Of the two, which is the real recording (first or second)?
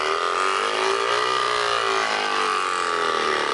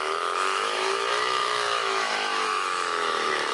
first